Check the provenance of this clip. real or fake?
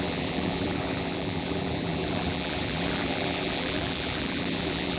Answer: fake